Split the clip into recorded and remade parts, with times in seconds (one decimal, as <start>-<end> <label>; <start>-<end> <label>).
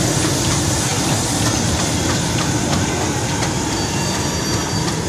0.0-5.1 recorded